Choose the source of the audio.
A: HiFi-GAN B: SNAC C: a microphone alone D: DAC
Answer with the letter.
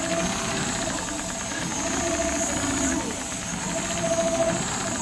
C